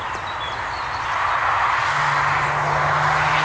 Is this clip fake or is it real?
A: real